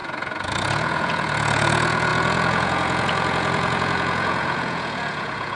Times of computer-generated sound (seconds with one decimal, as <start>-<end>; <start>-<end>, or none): 0.0-5.6